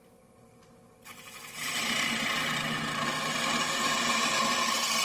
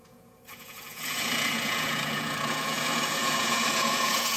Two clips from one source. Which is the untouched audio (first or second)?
first